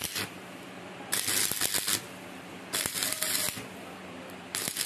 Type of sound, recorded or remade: remade